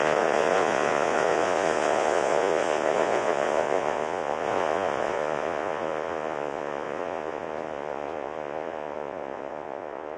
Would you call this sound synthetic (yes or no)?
yes